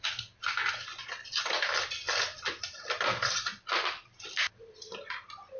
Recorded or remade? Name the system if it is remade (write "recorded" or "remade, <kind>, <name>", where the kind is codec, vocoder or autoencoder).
recorded